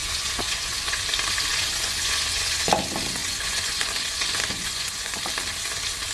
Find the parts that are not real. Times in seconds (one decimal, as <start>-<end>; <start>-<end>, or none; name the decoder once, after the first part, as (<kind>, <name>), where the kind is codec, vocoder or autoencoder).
0.0-1.0 (vocoder, Vocos); 1.5-2.7; 3.2-5.2